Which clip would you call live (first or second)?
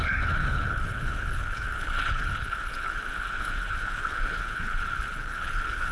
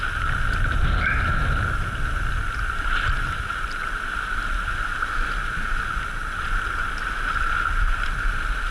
second